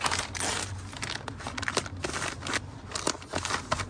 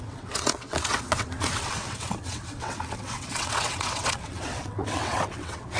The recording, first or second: first